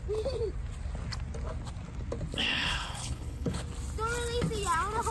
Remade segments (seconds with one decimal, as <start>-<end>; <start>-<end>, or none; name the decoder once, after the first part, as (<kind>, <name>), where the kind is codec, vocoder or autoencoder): 2.5-3.6 (codec, HILCodec)